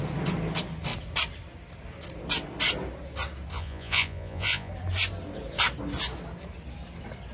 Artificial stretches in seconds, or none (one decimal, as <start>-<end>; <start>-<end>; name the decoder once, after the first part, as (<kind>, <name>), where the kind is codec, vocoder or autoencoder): 3.5-4.7 (vocoder, Vocos)